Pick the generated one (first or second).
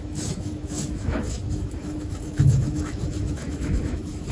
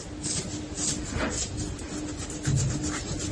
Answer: first